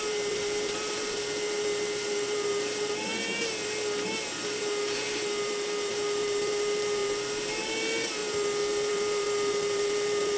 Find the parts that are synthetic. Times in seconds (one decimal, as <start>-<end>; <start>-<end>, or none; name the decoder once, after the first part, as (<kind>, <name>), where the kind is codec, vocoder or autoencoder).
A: 0.0-3.1 (vocoder, BigVGAN v2); 4.5-8.2; 8.9-10.4